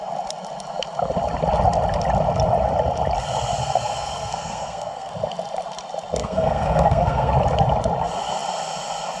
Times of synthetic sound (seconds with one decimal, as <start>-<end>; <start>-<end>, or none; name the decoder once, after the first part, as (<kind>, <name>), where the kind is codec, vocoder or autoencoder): 3.6-5.1 (codec, SNAC); 6.2-7.3